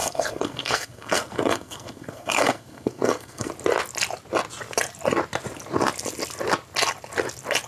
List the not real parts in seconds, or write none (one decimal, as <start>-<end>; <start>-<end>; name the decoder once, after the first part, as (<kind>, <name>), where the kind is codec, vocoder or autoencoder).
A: 0.0-3.5 (codec, SNAC)